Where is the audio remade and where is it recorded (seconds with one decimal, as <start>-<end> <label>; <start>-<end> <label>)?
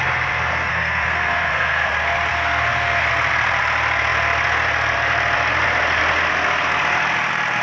0.0-0.5 recorded; 0.5-1.9 remade; 1.9-2.3 recorded; 2.3-3.1 remade; 3.1-7.6 recorded